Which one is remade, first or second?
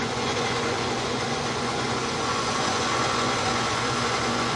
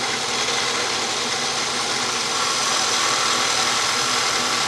first